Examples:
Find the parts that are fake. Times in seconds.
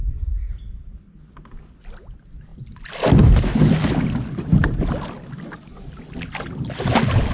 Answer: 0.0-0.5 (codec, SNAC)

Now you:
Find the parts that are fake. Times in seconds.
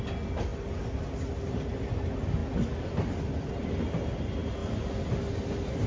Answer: none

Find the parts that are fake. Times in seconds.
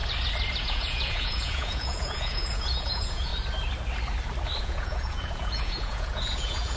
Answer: 0.6-3.3 (vocoder, Vocos); 4.6-6.8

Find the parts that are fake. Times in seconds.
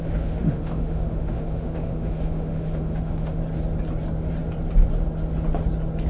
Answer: 0.0-3.4 (autoencoder, DAC-VAE)